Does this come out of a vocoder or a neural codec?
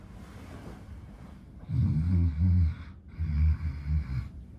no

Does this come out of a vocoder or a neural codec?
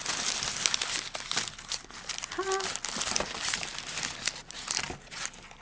no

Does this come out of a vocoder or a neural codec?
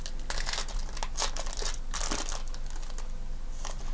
no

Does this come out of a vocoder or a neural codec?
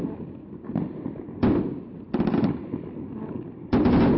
yes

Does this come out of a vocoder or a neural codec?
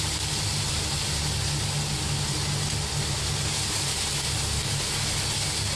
no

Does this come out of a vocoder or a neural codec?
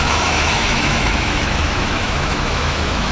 yes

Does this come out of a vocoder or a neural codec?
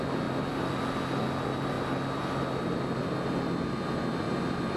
no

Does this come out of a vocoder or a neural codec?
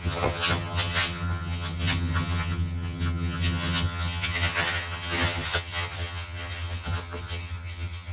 yes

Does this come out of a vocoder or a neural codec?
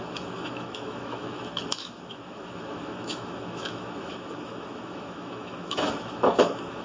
yes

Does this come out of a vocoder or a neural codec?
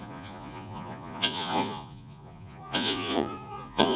yes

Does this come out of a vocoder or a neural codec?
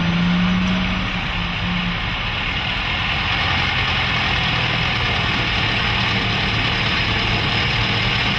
no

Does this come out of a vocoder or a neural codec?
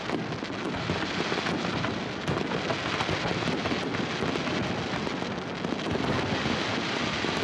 no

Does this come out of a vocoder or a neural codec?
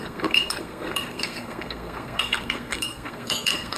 yes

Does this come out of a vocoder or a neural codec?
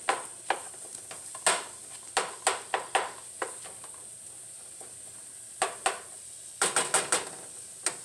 no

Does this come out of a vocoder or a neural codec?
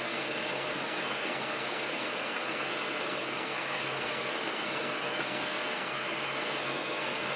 yes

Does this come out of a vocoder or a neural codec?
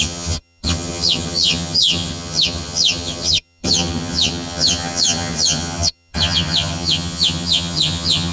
yes